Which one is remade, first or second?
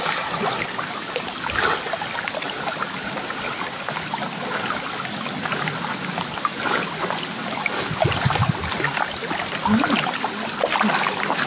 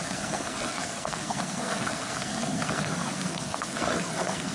second